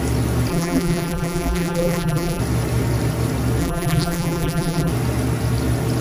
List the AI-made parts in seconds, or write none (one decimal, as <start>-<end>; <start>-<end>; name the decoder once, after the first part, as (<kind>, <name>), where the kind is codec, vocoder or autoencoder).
0.5-2.4 (vocoder, BigVGAN v2); 3.6-4.9